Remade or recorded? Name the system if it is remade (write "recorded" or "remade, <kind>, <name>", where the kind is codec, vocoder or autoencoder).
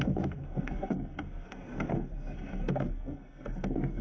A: remade, codec, SNAC